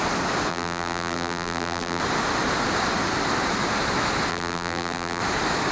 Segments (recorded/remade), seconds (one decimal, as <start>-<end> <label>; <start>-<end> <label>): 0.0-0.5 recorded; 0.5-2.0 remade; 2.0-4.3 recorded; 4.3-5.2 remade; 5.2-5.7 recorded